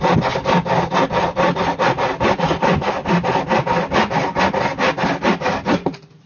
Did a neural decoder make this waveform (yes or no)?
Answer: no